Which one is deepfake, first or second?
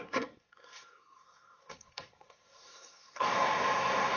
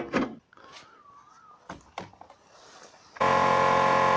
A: first